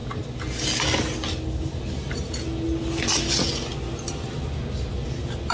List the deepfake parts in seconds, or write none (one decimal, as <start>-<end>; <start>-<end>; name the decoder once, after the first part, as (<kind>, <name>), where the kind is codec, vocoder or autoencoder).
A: 3.7-4.4 (vocoder, BigVGAN v2)